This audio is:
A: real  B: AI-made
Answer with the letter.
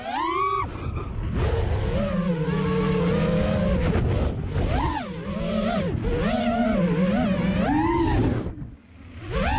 A